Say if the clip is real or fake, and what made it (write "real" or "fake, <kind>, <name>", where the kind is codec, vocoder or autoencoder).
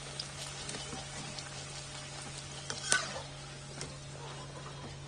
real